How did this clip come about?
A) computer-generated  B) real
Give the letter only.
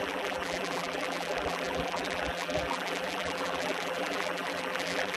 A